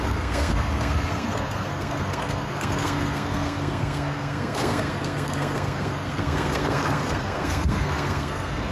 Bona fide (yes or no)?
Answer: no